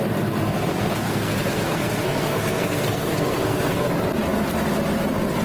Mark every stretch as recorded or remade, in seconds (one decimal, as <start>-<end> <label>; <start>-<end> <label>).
0.0-0.7 recorded; 0.7-3.9 remade; 3.9-5.4 recorded